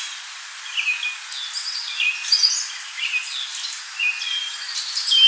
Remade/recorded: recorded